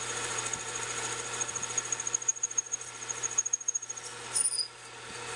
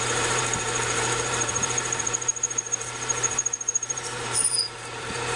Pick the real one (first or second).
first